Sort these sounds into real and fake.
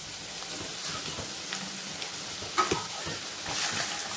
real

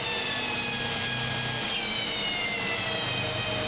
real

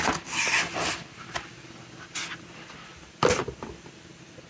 real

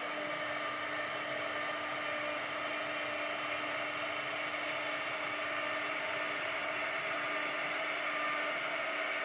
real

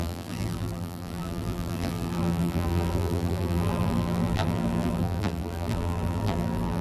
fake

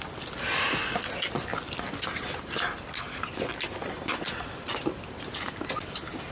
real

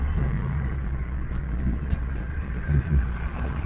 fake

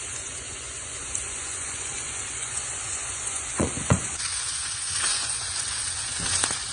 fake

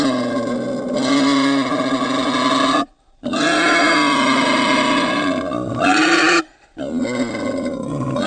real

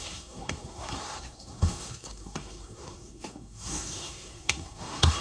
fake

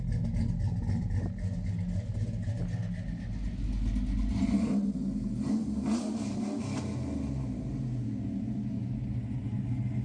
real